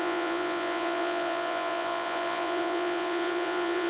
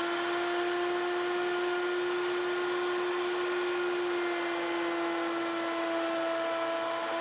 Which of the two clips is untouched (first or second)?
second